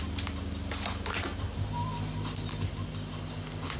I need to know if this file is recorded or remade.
recorded